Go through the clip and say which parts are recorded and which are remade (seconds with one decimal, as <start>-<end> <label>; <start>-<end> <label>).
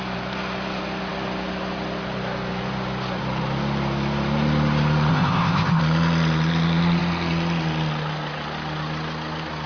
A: 0.0-5.1 recorded; 5.1-5.8 remade; 5.8-9.7 recorded